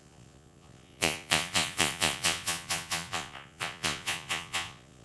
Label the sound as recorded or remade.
remade